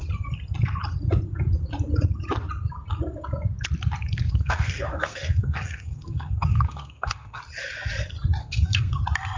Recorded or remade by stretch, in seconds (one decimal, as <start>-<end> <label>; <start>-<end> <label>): 0.0-4.2 recorded; 4.2-7.4 remade; 7.4-8.4 recorded; 8.4-9.0 remade; 9.0-9.4 recorded